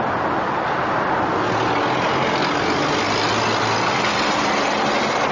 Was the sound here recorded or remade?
recorded